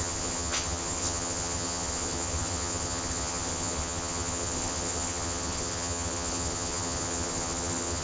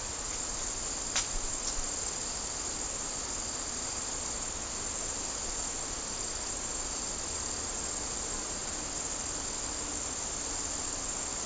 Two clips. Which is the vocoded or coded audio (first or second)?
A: first